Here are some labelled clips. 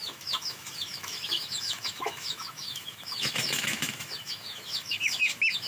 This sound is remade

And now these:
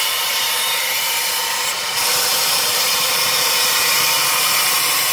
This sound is remade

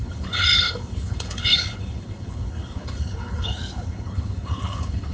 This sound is remade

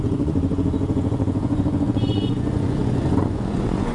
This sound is remade